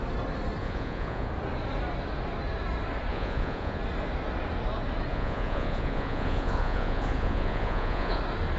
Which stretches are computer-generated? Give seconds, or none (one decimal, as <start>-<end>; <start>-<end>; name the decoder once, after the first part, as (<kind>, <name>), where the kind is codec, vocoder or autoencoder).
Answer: 0.6-1.3 (vocoder, Vocos); 3.1-3.8; 5.1-8.2